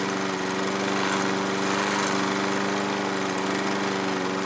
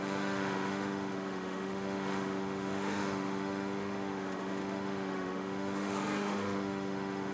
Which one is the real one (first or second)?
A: first